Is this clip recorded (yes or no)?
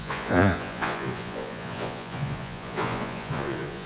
no